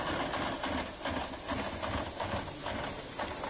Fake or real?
real